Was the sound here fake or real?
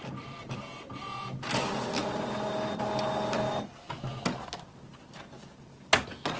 real